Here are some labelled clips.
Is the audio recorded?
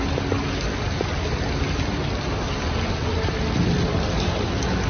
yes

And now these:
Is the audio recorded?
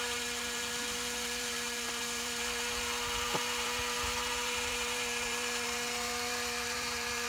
no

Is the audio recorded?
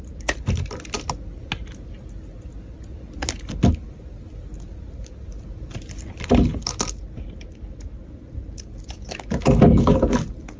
yes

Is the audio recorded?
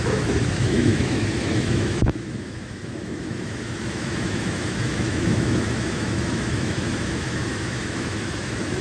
no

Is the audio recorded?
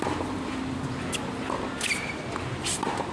yes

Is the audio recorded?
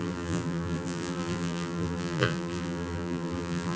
no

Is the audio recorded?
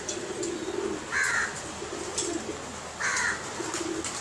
yes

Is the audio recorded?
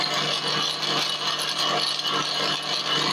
yes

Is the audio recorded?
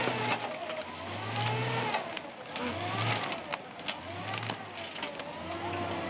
yes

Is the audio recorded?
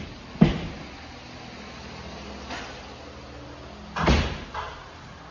yes